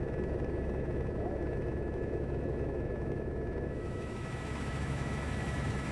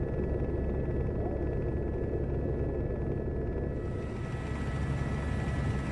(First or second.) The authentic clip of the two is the second